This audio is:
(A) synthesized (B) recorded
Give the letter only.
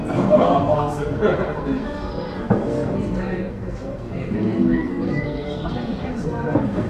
A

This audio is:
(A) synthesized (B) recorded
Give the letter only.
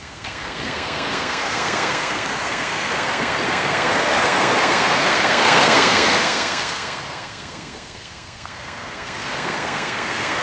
A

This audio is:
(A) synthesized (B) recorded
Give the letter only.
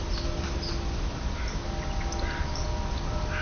B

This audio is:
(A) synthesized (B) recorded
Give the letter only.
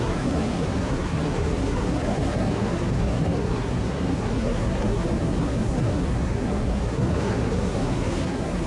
A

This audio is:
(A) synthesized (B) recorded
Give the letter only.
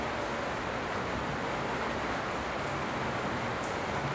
B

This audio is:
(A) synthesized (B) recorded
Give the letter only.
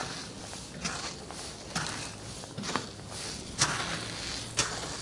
B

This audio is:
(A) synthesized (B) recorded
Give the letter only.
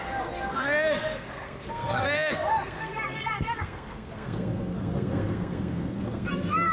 A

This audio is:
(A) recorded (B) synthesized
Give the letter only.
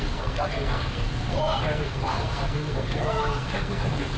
B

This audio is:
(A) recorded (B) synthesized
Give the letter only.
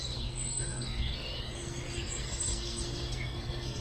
B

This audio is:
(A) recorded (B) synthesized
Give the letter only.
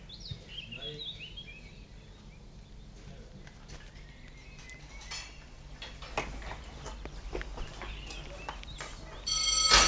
A